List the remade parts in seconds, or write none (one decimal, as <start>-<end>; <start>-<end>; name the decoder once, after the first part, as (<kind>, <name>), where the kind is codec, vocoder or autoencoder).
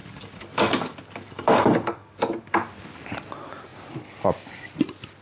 0.0-2.3 (codec, DAC)